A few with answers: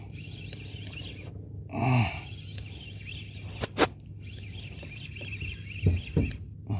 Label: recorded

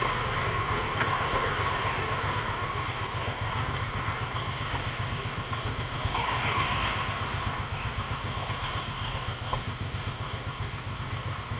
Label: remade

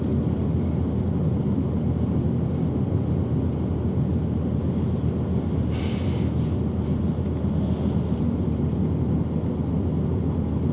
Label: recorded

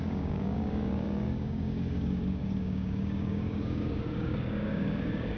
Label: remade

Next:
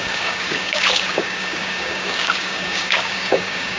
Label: remade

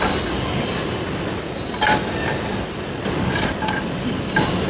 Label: recorded